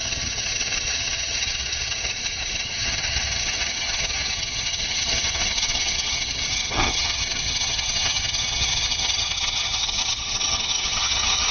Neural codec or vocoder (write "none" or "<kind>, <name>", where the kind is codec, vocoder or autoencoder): vocoder, HiFi-GAN